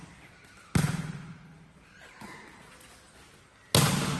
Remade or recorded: recorded